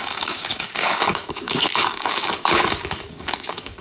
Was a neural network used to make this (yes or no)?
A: yes